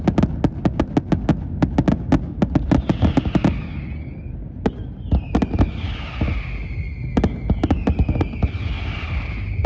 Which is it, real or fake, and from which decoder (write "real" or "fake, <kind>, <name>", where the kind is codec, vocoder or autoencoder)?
real